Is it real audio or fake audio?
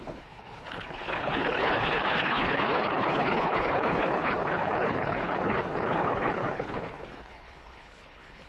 fake